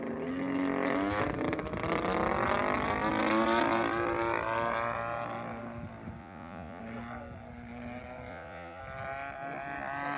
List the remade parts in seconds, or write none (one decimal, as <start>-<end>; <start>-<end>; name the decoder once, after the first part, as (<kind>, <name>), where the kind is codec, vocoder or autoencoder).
6.2-6.8 (vocoder, Vocos); 8.3-8.8